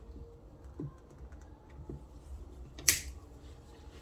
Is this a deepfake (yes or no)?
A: yes